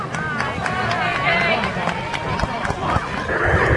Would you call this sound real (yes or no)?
yes